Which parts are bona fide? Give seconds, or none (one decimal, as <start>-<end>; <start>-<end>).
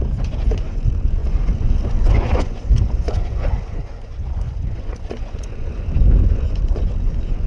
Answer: none